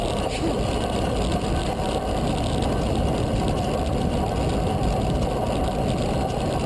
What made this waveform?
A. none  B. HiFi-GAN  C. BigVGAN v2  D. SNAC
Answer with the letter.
A